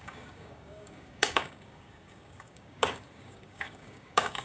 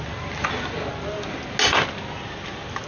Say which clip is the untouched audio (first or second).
second